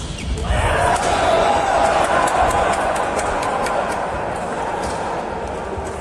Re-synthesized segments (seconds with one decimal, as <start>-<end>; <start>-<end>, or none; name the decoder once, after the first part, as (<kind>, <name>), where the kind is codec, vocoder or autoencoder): 0.4-4.0 (vocoder, Vocos)